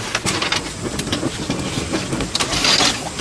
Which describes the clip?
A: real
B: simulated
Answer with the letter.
A